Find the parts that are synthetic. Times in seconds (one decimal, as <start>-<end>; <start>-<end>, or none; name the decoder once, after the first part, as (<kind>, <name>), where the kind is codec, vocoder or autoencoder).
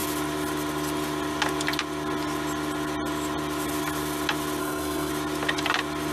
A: 4.6-5.1 (codec, SNAC)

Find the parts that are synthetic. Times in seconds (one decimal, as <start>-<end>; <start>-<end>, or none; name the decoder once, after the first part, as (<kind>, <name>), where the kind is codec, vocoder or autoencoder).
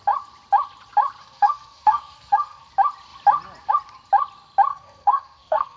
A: 1.2-2.7 (codec, SNAC); 4.7-5.8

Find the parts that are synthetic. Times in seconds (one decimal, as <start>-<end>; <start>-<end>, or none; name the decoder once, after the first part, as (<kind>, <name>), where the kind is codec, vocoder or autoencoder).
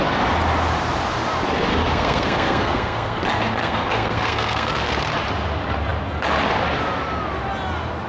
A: 1.7-3.2 (codec, SNAC); 3.6-4.7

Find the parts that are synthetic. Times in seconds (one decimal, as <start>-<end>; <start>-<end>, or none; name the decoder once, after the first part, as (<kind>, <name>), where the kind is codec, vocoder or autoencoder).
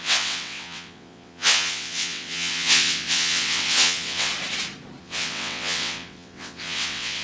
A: 0.0-4.3 (vocoder, WaveNeXt); 5.0-7.2